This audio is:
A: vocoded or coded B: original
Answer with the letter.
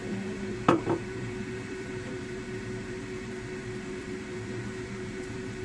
A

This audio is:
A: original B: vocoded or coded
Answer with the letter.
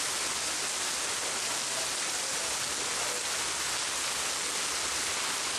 A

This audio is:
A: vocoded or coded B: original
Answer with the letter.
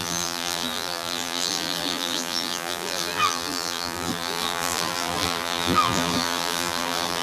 A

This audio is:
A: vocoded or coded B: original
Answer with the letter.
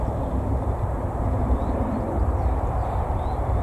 A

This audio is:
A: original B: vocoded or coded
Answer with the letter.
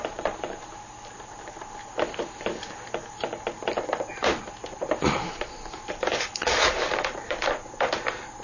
B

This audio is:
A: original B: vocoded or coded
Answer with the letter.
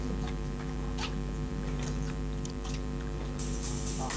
B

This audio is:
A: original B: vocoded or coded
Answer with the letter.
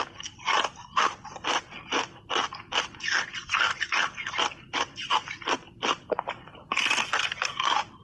A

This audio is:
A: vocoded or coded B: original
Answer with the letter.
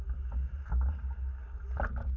B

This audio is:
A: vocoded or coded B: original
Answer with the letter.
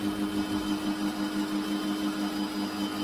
B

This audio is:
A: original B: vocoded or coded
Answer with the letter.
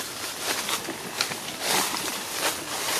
B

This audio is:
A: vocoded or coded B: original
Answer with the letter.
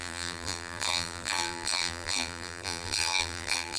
A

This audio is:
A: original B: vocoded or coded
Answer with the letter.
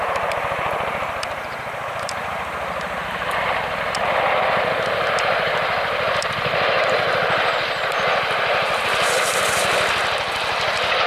B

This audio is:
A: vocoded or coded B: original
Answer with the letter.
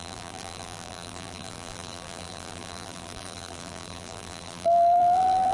A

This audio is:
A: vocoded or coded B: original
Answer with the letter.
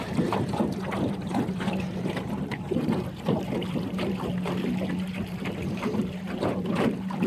A